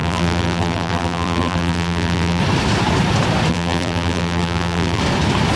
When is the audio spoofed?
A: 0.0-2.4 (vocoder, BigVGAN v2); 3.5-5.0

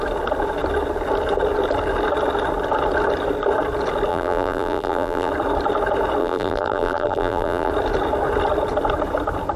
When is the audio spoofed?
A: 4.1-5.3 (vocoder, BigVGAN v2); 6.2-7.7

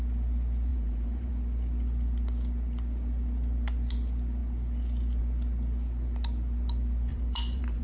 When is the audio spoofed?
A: 0.7-1.3 (vocoder, BigVGAN v2); 7.1-7.8